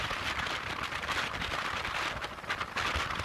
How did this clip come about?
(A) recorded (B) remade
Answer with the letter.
A